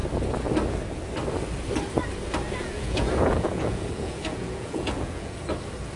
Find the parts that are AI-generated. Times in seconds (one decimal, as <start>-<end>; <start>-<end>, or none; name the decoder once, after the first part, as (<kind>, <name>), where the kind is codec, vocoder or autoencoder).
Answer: 2.6-5.4 (vocoder, Vocos)